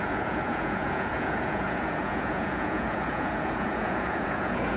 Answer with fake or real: fake